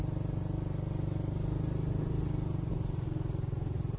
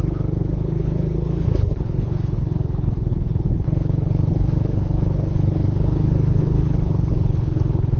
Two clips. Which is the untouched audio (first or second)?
first